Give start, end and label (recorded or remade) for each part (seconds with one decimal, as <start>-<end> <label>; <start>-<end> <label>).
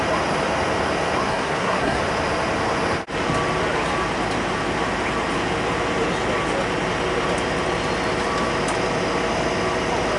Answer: 0.0-1.3 recorded; 1.3-2.0 remade; 2.0-10.2 recorded